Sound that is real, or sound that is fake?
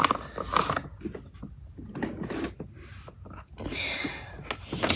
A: real